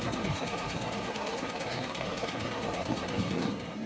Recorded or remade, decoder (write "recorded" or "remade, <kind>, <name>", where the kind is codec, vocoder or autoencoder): remade, codec, SNAC